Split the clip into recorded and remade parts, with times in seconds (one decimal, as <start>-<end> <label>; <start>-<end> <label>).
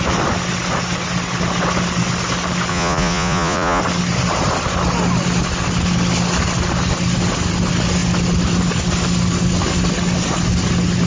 0.0-2.7 recorded; 2.7-3.8 remade; 3.8-11.1 recorded